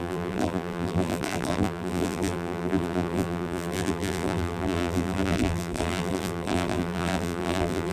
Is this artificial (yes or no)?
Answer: yes